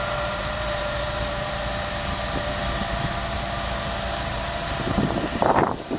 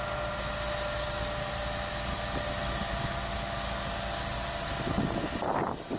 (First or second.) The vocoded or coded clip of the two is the first